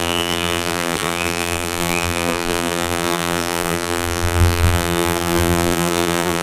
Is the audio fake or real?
fake